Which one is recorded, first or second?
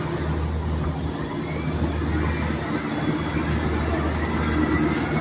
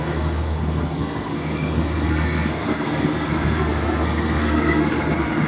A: first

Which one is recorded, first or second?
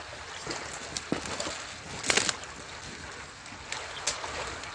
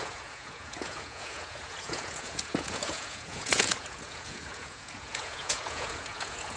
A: first